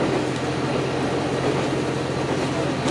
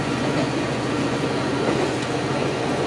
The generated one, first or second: second